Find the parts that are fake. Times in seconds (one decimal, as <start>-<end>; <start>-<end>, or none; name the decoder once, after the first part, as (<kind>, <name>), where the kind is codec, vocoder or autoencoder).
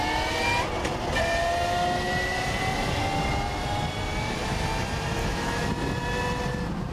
5.2-5.7 (autoencoder, DAC-VAE)